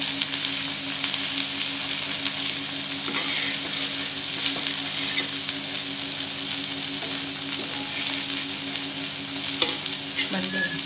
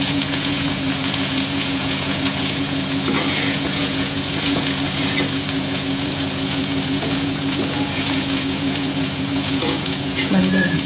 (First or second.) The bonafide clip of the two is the first